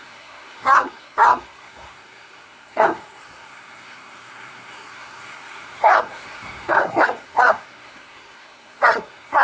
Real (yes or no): no